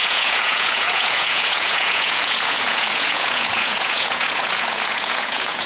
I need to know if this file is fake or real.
fake